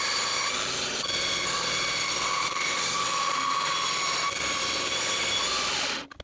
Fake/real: real